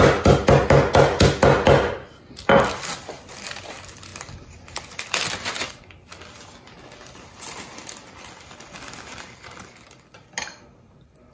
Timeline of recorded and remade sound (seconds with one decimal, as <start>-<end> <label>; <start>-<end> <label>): 0.0-11.3 recorded